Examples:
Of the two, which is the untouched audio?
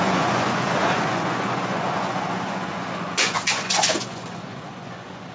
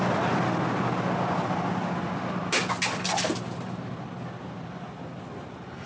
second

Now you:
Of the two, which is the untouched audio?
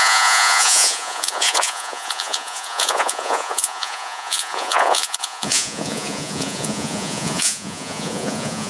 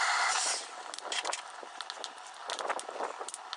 second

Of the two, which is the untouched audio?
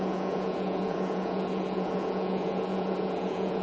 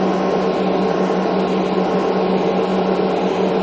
second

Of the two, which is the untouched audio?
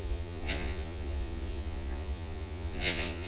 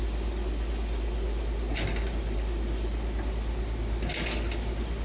second